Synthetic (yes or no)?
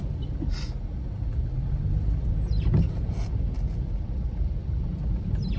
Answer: no